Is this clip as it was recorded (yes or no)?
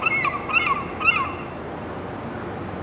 yes